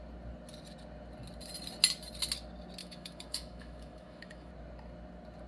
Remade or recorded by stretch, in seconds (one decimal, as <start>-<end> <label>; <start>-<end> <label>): 0.0-2.8 recorded; 2.8-4.5 remade; 4.5-5.5 recorded